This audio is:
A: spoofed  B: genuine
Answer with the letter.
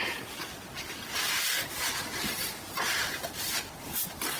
B